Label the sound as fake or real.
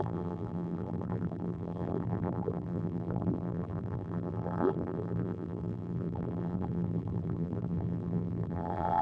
fake